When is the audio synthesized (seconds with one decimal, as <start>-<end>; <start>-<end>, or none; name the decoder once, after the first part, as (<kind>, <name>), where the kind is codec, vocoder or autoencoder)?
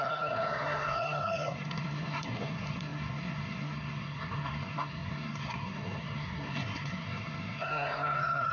0.0-8.5 (codec, SNAC)